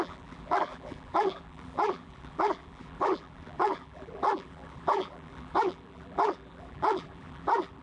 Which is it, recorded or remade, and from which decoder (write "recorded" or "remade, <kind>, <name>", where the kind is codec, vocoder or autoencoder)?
remade, vocoder, BigVGAN v2